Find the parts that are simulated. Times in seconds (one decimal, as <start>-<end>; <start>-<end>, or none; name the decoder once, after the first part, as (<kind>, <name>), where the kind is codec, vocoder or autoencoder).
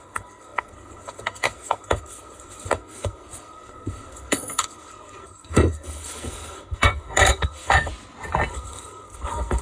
0.0-7.9 (codec, SNAC); 8.5-9.6